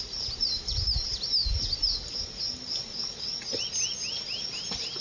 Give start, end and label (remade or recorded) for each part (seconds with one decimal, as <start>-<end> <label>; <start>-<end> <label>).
0.0-5.0 recorded